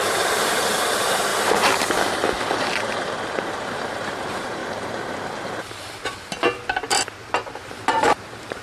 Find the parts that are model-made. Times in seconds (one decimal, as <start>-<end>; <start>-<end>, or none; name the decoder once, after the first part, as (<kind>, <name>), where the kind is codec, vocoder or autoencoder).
0.0-1.3 (vocoder, BigVGAN v2); 2.6-4.6; 7.9-8.6